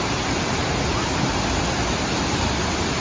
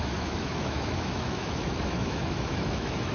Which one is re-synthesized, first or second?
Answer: second